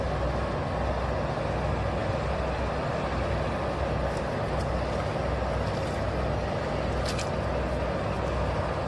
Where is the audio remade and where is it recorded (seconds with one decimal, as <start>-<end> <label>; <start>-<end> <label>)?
0.0-2.0 recorded; 2.0-3.6 remade; 3.6-8.9 recorded